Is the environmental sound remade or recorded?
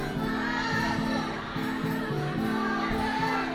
recorded